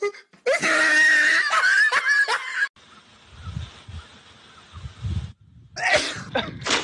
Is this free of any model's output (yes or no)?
yes